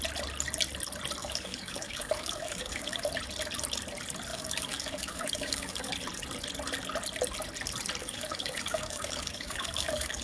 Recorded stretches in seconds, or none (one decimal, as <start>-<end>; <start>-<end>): 0.0-1.2; 3.1-4.3; 5.9-8.0